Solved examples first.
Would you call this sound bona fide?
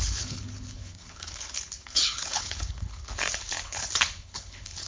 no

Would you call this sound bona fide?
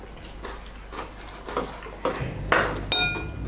yes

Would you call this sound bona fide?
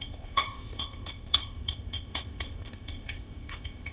no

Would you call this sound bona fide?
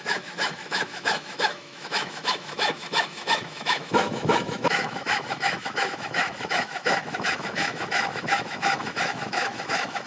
no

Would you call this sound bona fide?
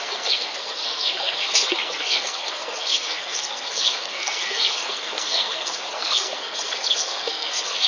no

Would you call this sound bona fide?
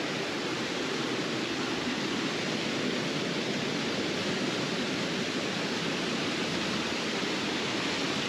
yes